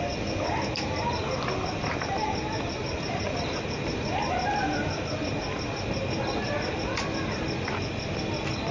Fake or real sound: real